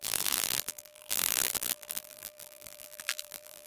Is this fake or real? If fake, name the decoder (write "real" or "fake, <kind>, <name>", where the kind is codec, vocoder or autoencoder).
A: fake, vocoder, BigVGAN v2